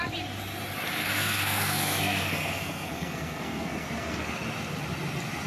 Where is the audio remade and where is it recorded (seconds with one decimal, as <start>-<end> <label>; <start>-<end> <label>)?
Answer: 0.0-1.0 recorded; 1.0-4.3 remade; 4.3-5.5 recorded